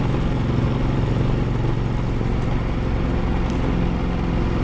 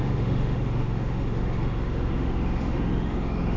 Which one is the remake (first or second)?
second